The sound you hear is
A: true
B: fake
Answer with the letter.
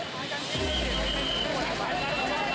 A